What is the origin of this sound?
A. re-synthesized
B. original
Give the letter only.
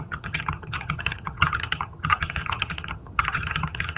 A